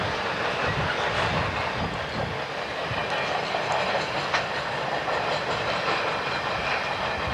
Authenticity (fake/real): real